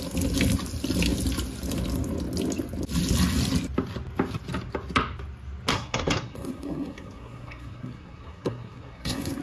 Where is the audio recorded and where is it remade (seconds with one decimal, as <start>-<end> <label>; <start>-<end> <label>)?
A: 0.0-5.7 recorded; 5.7-9.4 remade